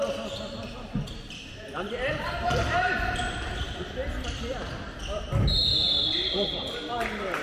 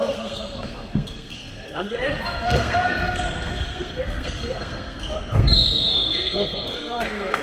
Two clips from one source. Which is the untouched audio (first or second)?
first